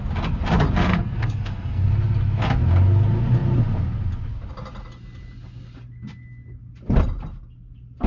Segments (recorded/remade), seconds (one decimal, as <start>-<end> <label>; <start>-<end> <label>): 0.0-0.9 recorded; 0.9-1.9 remade; 1.9-8.1 recorded